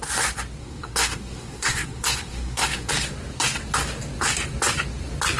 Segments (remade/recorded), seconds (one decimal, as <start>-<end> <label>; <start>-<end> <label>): 0.0-0.6 recorded; 0.6-2.9 remade; 2.9-5.4 recorded